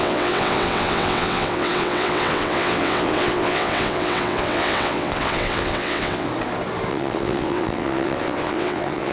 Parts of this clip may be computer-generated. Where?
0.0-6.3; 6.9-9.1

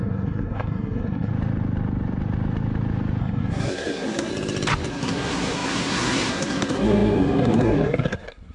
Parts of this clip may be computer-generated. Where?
0.0-1.3; 3.2-4.3; 4.9-8.5